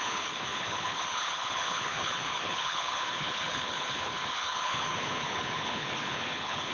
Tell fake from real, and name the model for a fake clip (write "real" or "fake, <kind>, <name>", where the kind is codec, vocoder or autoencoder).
fake, codec, HILCodec